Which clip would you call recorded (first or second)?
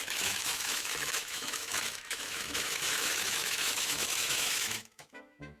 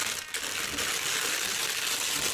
second